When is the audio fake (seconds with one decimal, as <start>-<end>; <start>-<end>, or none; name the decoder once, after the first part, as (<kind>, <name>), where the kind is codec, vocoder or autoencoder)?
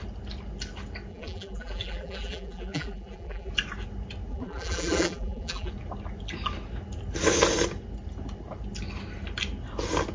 1.1-3.5 (vocoder, BigVGAN v2); 4.3-5.7